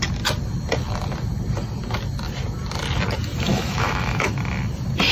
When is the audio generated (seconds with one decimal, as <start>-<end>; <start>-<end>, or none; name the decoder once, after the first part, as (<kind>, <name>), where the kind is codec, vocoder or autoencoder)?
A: 3.5-4.3 (autoencoder, DAC-VAE)